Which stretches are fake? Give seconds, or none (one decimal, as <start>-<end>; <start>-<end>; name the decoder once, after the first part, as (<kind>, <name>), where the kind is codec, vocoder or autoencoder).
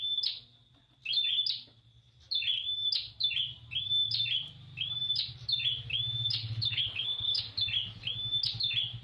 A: 6.4-7.4 (codec, HILCodec)